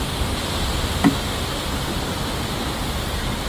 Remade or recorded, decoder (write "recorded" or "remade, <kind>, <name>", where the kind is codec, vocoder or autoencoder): recorded